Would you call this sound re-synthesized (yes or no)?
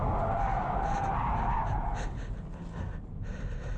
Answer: no